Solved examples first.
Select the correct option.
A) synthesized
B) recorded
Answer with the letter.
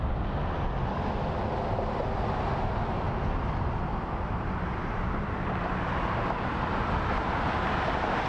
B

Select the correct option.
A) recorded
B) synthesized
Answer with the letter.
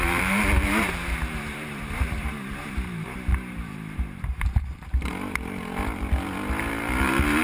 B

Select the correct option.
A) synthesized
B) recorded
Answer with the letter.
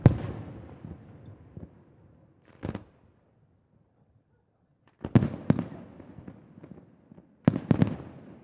B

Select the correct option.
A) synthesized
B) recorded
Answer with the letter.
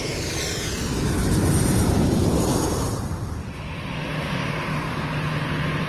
B